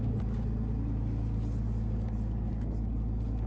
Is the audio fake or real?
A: real